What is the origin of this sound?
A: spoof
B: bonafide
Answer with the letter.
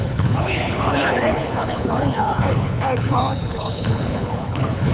A